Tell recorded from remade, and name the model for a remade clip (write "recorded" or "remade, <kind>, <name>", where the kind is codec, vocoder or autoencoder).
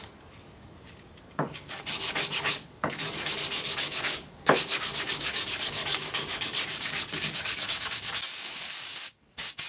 remade, codec, DAC